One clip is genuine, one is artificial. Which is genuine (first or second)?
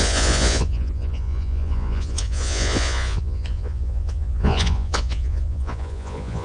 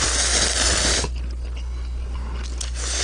second